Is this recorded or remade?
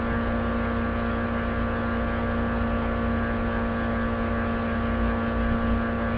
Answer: recorded